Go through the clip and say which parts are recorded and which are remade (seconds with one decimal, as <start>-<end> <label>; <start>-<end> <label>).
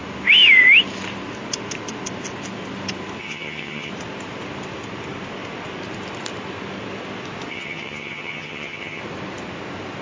0.0-3.2 recorded; 3.2-3.9 remade; 3.9-7.5 recorded; 7.5-9.0 remade; 9.0-10.0 recorded